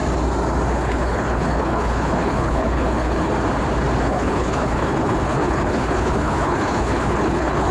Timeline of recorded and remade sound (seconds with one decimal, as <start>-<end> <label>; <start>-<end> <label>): 0.0-0.7 recorded; 0.7-3.3 remade; 3.3-4.0 recorded; 4.0-7.7 remade